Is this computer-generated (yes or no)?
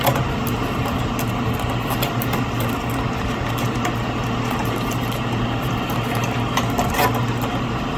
no